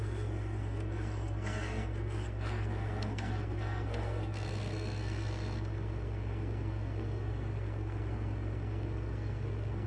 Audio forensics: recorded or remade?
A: remade